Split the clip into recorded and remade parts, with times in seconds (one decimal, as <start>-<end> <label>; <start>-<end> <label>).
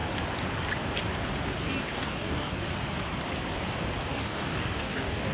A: 0.0-1.8 recorded; 1.8-2.6 remade; 2.6-4.1 recorded; 4.1-5.3 remade